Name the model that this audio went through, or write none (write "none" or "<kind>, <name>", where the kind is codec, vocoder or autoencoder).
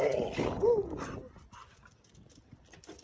none